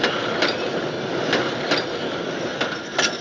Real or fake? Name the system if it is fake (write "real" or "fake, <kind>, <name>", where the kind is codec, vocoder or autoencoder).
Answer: real